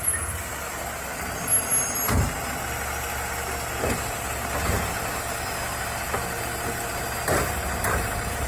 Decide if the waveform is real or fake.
real